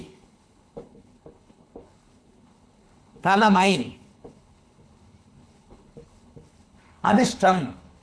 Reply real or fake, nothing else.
fake